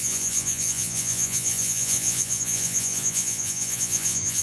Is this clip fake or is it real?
fake